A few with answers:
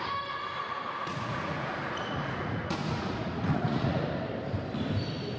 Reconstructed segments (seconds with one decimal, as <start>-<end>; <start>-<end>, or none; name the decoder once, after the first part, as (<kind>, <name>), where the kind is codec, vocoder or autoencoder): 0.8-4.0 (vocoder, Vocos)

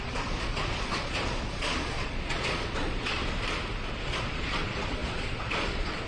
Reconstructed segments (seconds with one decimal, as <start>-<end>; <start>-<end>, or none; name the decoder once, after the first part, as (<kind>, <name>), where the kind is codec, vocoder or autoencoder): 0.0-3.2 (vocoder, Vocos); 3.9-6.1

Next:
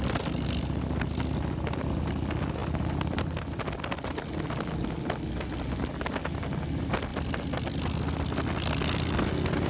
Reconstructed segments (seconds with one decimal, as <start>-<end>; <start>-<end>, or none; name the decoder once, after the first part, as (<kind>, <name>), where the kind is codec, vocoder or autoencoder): none

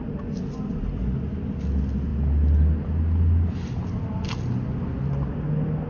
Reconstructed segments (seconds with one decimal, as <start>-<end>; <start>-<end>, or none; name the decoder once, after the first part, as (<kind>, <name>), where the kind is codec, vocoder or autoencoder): none

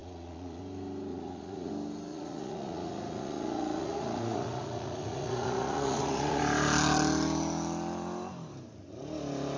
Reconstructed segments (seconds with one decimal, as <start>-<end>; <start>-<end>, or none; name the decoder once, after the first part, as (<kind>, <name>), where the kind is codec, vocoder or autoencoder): 0.0-0.6 (vocoder, Vocos); 1.1-1.7; 2.1-6.4